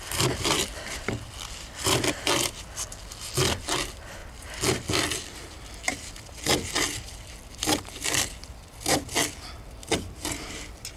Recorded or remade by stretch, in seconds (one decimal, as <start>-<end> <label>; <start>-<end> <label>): 0.0-11.0 recorded